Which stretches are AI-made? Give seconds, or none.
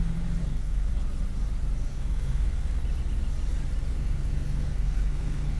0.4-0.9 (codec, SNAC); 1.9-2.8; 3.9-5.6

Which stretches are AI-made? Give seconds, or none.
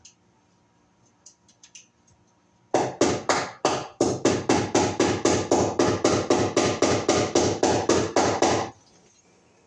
none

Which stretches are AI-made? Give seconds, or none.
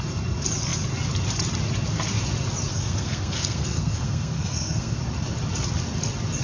2.7-5.0 (codec, SNAC)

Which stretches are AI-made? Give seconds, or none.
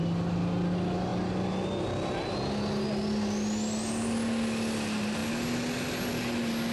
none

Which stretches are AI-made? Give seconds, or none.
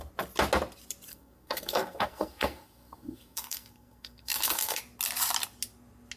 1.1-4.8 (codec, SNAC)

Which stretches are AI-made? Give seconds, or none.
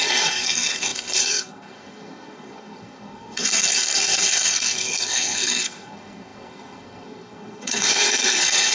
0.0-8.7 (codec, SNAC)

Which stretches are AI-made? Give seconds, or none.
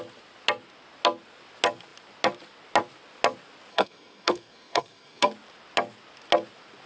3.7-5.3 (codec, SNAC)